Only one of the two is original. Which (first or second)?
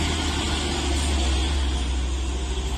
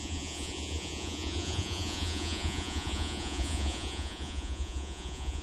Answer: first